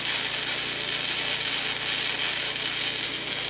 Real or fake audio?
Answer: real